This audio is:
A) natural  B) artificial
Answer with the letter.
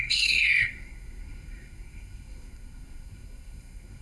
B